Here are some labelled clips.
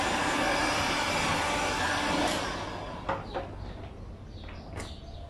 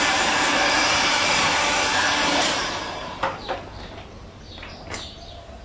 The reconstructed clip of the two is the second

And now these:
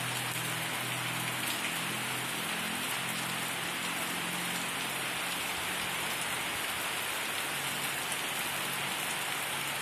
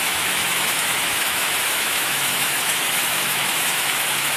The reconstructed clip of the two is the second